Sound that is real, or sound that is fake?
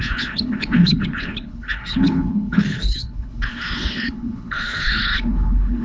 fake